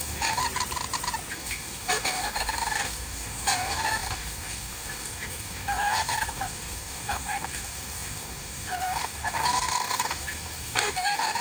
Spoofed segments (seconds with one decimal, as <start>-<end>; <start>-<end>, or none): 0.0-0.4; 1.3-11.4